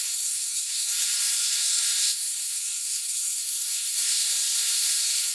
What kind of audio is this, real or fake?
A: fake